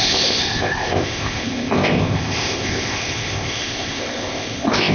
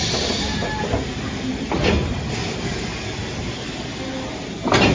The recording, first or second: second